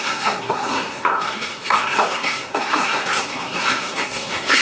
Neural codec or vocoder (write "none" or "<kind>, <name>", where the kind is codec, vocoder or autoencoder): codec, SNAC